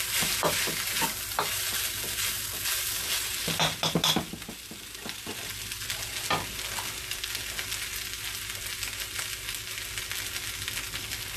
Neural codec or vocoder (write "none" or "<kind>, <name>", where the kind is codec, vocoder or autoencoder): none